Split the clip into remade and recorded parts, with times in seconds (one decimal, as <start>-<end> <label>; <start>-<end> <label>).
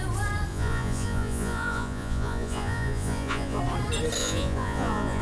0.0-0.5 recorded; 0.5-3.6 remade; 3.6-4.2 recorded; 4.2-5.2 remade